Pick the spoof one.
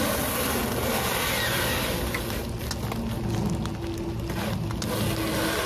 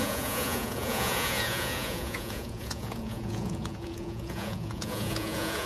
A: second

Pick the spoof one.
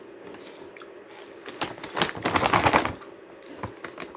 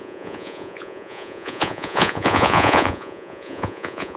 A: second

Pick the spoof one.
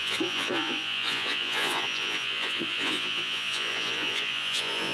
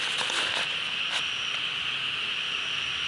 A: first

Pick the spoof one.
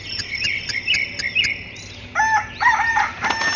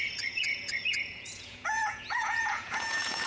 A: second